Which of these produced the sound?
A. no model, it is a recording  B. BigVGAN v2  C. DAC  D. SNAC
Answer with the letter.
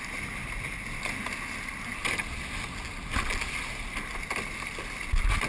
A